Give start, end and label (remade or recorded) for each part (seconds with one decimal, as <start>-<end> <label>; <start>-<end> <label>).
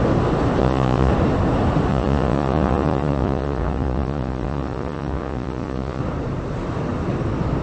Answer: 0.0-0.6 recorded; 0.6-1.1 remade; 1.1-1.9 recorded; 1.9-6.0 remade; 6.0-7.6 recorded